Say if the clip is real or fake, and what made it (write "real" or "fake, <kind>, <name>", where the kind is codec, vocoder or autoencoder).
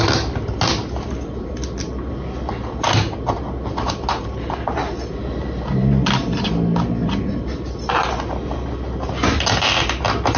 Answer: real